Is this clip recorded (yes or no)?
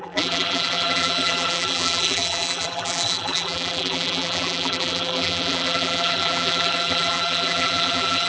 no